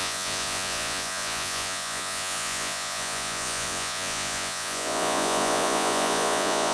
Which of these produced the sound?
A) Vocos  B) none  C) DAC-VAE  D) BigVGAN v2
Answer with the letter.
A